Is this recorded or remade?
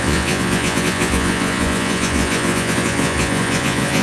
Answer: remade